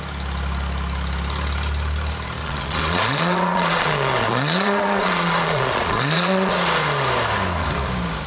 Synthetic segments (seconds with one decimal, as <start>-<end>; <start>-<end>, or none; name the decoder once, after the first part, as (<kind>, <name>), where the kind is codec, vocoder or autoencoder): 2.4-6.5 (vocoder, Vocos)